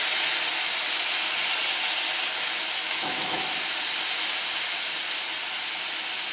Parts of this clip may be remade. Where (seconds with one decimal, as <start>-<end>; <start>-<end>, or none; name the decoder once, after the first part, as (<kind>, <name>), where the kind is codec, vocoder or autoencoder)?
2.8-3.4 (autoencoder, DAC-VAE)